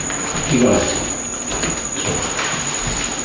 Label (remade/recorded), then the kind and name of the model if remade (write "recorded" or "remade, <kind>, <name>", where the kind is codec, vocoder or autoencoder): recorded